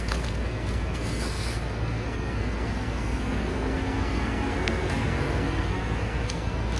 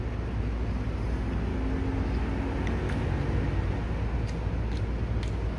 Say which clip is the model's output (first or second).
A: first